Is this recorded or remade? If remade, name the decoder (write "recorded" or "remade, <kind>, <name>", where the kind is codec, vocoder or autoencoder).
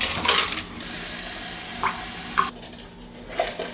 recorded